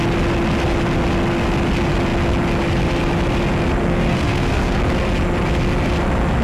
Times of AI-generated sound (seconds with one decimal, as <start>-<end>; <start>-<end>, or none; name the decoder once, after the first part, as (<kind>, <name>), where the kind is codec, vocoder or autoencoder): 3.8-4.8 (codec, SNAC)